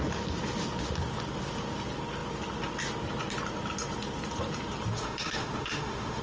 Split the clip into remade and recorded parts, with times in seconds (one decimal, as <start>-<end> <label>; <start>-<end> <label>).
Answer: 0.0-4.9 recorded; 4.9-6.2 remade